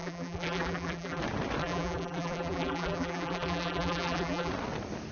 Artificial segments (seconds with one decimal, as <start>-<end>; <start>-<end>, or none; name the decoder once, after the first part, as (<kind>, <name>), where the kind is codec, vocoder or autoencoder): 0.0-1.2 (vocoder, BigVGAN v2); 1.6-4.5